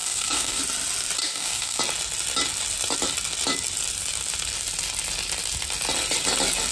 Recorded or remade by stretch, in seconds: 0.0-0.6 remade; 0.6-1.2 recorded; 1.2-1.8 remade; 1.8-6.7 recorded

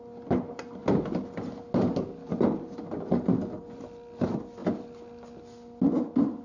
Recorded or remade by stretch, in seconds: 0.0-6.4 recorded

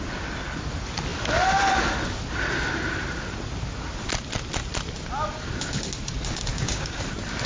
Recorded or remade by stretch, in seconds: 0.0-6.5 recorded; 6.5-7.0 remade; 7.0-7.5 recorded

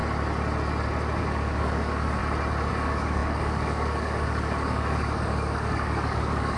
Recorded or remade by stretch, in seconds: 0.0-1.2 recorded; 1.2-2.2 remade; 2.2-2.7 recorded; 2.7-6.6 remade

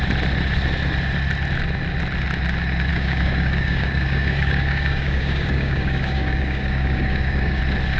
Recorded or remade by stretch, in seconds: 0.0-2.9 recorded; 2.9-7.6 remade; 7.6-8.0 recorded

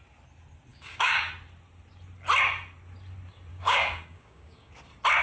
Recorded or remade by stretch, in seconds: 0.0-0.7 recorded; 0.7-1.3 remade; 1.3-3.5 recorded; 3.5-4.7 remade; 4.7-5.2 recorded